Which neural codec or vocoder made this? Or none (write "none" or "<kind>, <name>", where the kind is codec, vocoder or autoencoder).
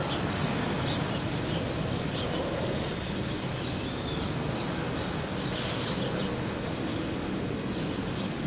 none